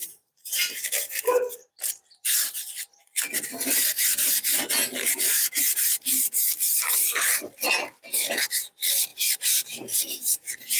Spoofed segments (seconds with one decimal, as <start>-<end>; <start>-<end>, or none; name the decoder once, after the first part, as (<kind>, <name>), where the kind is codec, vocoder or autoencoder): 0.0-1.7 (vocoder, BigVGAN v2); 9.1-10.8